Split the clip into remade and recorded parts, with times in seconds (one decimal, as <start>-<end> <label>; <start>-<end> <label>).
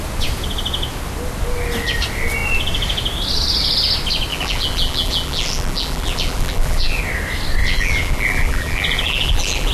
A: 0.0-4.3 recorded; 4.3-7.0 remade; 7.0-7.6 recorded; 7.6-9.7 remade